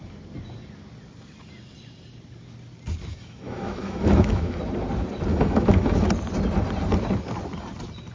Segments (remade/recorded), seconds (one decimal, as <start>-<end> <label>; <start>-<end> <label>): 0.0-3.1 recorded; 3.1-4.6 remade; 4.6-5.3 recorded; 5.3-6.1 remade; 6.1-8.1 recorded